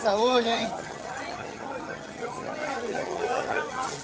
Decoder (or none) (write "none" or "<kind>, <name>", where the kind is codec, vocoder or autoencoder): vocoder, HiFi-GAN